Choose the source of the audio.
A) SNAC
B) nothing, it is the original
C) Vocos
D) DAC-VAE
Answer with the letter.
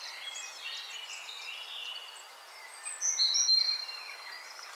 B